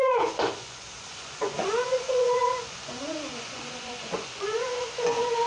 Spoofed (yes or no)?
yes